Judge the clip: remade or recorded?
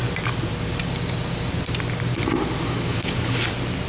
recorded